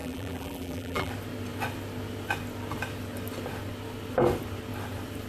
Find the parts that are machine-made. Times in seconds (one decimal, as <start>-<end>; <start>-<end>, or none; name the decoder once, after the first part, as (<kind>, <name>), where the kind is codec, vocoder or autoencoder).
0.0-1.1 (vocoder, BigVGAN v2)